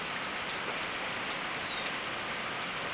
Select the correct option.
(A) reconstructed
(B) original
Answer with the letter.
B